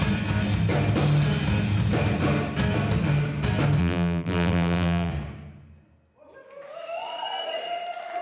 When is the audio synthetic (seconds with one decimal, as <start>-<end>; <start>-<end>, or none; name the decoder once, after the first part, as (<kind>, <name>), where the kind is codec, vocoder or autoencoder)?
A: 3.8-5.1 (vocoder, BigVGAN v2)